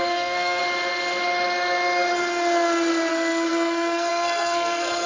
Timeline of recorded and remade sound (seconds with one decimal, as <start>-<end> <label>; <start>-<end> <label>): 0.0-0.6 remade; 0.6-3.1 recorded; 3.1-5.1 remade

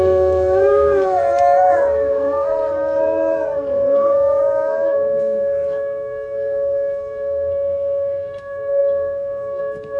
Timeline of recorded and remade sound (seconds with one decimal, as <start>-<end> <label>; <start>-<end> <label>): 0.0-10.0 remade

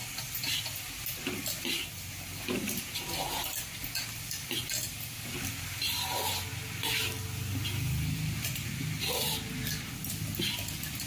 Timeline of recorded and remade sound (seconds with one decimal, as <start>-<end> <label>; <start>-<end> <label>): 0.0-11.1 recorded

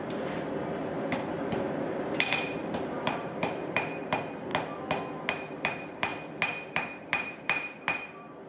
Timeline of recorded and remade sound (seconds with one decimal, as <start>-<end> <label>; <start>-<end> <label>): 0.0-4.5 remade; 4.5-5.3 recorded; 5.3-6.1 remade; 6.1-6.7 recorded; 6.7-8.5 remade

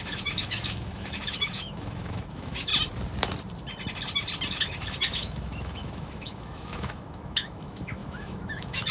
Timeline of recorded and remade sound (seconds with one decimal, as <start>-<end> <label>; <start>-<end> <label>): 0.0-2.7 remade; 2.7-4.5 recorded; 4.5-8.9 remade

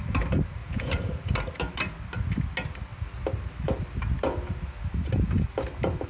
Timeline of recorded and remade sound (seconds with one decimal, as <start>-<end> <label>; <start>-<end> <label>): 0.0-0.6 recorded; 0.6-1.1 remade; 1.1-6.1 recorded

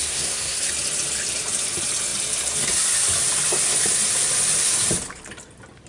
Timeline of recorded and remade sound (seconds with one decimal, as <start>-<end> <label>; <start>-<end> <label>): 0.0-0.7 remade; 0.7-5.9 recorded

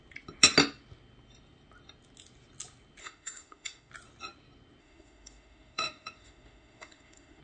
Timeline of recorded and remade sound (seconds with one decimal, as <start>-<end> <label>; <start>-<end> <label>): 0.0-3.0 recorded; 3.0-3.9 remade; 3.9-4.8 recorded; 4.8-7.4 remade